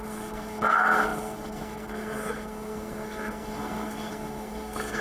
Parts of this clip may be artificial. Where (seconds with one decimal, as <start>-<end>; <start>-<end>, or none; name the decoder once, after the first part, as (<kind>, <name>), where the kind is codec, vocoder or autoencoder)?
0.0-5.0 (codec, SNAC)